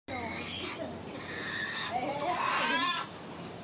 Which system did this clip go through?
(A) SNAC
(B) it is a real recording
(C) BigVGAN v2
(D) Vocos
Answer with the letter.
B